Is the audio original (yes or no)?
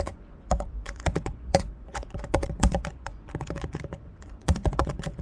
no